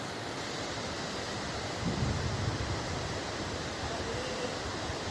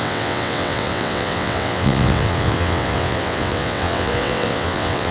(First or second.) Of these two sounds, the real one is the first